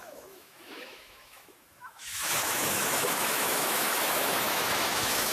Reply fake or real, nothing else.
fake